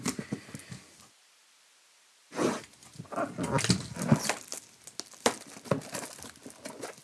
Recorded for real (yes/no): yes